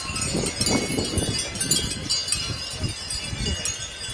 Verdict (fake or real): real